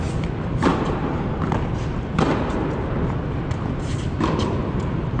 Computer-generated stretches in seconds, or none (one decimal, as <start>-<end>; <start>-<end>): 0.7-1.3

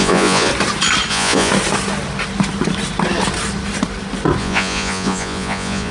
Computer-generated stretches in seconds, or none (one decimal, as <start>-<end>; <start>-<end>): 0.0-0.5; 1.1-1.5; 4.4-5.9

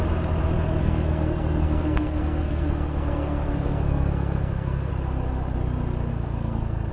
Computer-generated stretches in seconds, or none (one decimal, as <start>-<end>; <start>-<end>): 0.8-4.9; 6.1-6.9

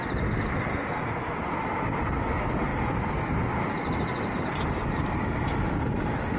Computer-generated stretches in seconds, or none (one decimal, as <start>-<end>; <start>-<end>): none

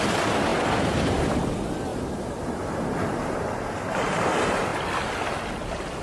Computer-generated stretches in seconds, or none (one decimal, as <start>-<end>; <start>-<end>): none

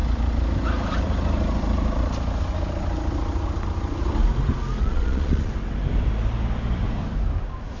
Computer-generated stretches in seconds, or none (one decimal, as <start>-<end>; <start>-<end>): 4.8-5.5